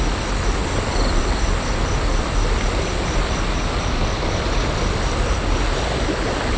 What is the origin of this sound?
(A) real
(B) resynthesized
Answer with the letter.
A